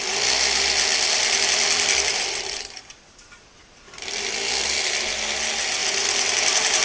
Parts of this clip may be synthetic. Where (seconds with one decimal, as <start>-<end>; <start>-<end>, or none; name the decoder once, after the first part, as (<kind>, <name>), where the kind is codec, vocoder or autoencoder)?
0.9-4.9 (vocoder, BigVGAN v2); 5.8-6.3